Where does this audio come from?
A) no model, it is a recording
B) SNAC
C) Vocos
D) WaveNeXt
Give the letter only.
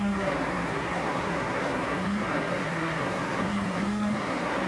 B